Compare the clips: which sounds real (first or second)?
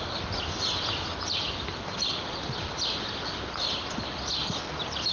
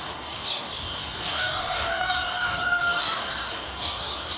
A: first